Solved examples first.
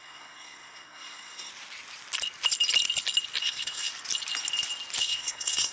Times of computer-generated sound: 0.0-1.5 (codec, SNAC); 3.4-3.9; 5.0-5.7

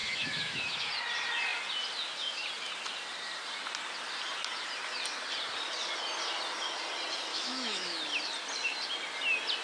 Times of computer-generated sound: 0.0-0.9 (autoencoder, DAC-VAE); 7.3-8.0

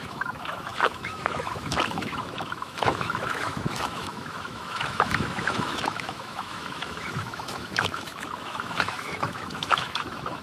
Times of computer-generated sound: 0.0-10.4 (autoencoder, DAC-VAE)

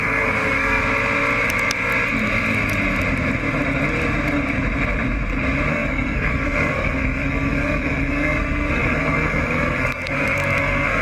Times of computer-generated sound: 0.0-0.8 (codec, SNAC); 5.7-11.0

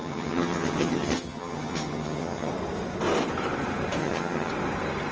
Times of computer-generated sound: 0.0-2.5 (vocoder, HiFi-GAN); 4.0-4.5

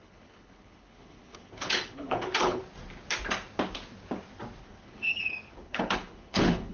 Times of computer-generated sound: 0.0-2.6 (codec, HILCodec); 4.6-6.7